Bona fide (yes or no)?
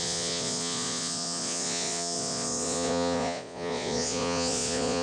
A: no